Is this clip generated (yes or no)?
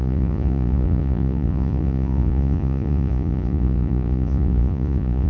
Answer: yes